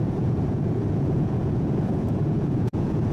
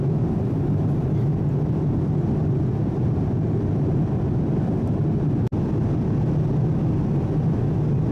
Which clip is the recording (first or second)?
second